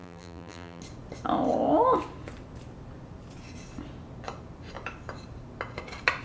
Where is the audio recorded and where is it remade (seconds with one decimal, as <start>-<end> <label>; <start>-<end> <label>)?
0.0-0.8 remade; 0.8-6.2 recorded